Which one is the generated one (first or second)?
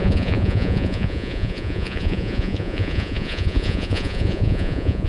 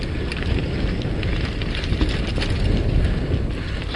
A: first